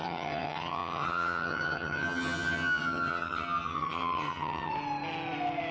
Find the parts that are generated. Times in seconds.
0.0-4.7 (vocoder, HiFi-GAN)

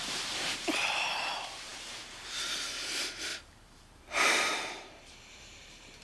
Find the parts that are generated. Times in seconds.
0.0-6.0 (vocoder, BigVGAN v2)